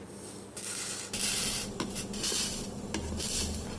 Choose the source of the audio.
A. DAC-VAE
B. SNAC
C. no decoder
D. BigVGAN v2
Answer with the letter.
C